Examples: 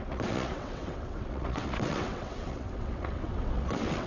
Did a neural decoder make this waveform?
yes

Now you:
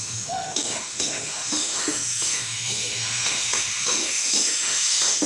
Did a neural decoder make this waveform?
yes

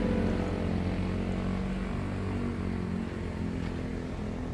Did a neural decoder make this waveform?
no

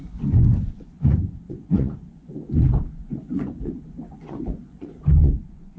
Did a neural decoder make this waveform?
yes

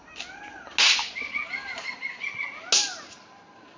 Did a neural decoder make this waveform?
no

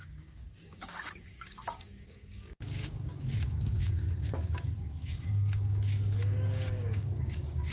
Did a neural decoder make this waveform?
yes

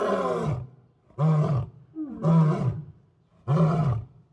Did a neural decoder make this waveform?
no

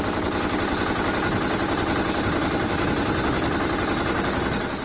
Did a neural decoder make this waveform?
no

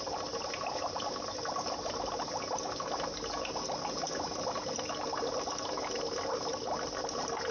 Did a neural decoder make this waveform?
no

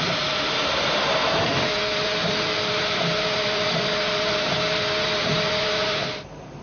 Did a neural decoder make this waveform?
yes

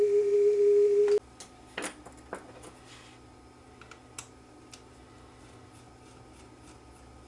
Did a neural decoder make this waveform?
no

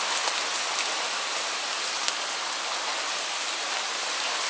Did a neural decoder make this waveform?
no